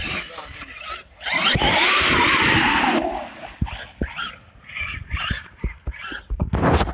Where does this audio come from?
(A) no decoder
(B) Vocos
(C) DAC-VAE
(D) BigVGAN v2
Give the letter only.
A